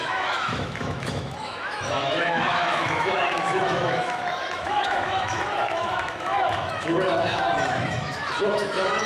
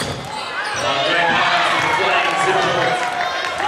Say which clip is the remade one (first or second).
first